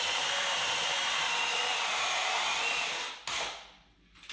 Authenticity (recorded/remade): recorded